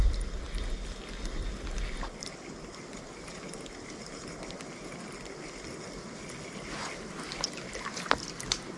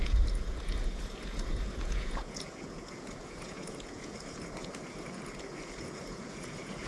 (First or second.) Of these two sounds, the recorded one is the first